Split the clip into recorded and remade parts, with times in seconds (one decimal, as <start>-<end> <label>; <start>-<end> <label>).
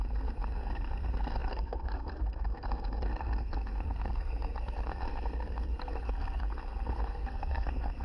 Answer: 0.0-8.0 remade